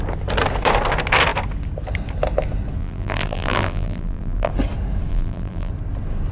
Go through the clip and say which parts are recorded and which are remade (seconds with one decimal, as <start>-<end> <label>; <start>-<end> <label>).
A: 0.0-2.8 recorded; 2.8-4.5 remade; 4.5-5.1 recorded; 5.1-5.7 remade; 5.7-6.3 recorded